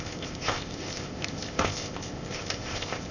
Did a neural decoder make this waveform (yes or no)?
yes